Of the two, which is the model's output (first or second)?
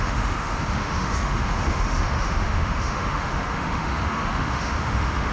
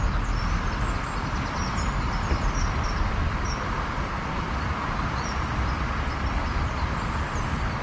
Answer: first